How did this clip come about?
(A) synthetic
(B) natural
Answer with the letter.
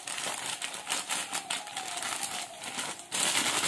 B